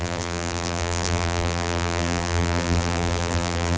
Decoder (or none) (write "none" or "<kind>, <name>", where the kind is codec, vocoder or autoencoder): vocoder, BigVGAN v2